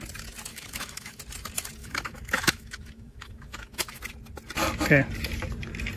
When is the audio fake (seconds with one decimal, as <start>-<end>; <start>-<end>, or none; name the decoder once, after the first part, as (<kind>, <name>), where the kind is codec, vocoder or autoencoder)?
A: 0.5-1.2 (autoencoder, DAC-VAE); 1.8-4.0